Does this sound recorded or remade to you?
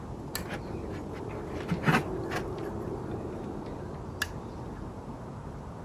recorded